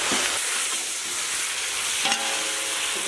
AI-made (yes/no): no